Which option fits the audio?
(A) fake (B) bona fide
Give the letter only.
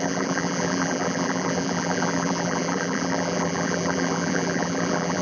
A